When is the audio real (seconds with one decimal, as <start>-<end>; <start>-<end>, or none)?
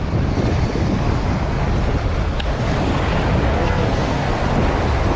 0.0-3.5; 4.3-5.2